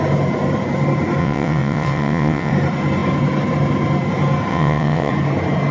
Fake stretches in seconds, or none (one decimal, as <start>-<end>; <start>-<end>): 1.2-2.5; 4.5-5.1